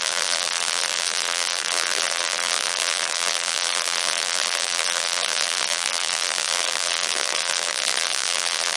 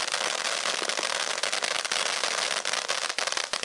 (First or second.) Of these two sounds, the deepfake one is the first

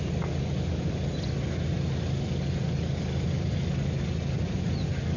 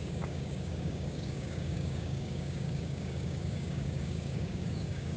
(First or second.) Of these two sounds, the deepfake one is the second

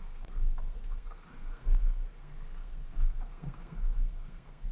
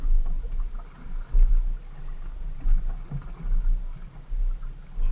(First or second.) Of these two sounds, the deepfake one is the first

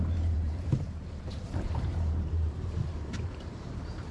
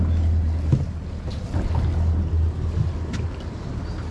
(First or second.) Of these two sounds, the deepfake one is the first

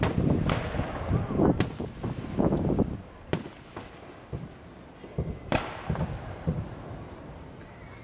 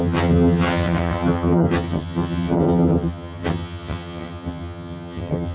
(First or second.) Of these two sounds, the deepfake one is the second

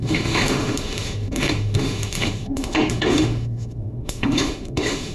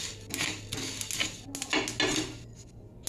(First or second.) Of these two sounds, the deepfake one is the first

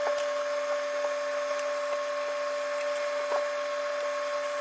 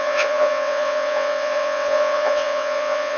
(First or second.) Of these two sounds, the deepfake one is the second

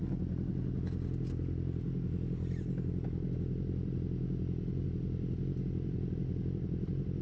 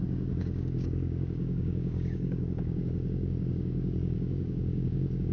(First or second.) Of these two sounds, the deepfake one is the second